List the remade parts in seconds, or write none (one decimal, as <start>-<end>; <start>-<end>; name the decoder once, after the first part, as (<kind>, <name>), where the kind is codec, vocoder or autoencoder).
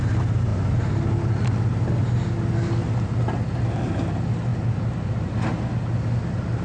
none